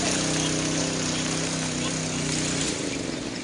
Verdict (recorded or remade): recorded